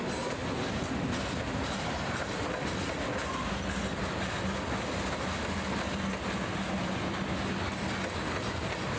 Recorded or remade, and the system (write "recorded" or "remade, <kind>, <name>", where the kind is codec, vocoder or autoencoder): recorded